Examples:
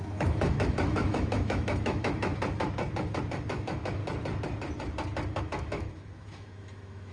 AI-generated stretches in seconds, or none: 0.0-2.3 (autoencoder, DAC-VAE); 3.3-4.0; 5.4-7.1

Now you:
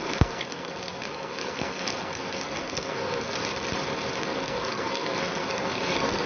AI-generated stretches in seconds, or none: 0.0-3.4 (codec, SNAC); 4.2-6.3

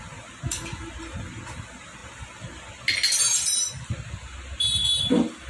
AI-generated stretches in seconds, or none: none

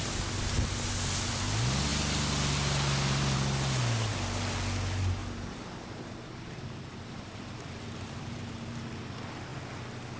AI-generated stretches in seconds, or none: 5.2-8.7 (vocoder, BigVGAN v2)

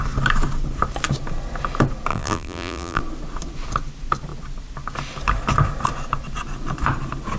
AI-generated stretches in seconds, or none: 2.1-3.0 (vocoder, BigVGAN v2)

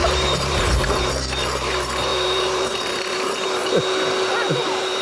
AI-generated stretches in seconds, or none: 0.0-3.6 (vocoder, BigVGAN v2); 4.5-5.0